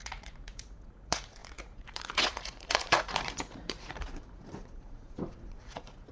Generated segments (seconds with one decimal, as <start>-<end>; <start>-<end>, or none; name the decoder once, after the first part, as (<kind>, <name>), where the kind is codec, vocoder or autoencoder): 0.0-6.1 (vocoder, Vocos)